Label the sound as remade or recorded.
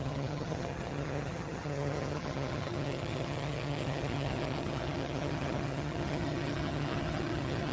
remade